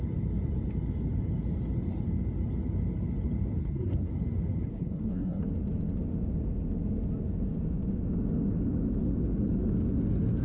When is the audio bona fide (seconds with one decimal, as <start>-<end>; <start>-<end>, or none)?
0.0-3.6; 4.1-4.7; 5.4-10.4